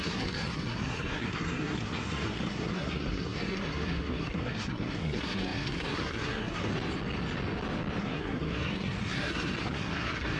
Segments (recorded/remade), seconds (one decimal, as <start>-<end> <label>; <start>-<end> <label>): 0.0-6.7 remade; 6.7-8.0 recorded; 8.0-10.4 remade